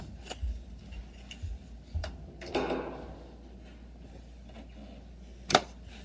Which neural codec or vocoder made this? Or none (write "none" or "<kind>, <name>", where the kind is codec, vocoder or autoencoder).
none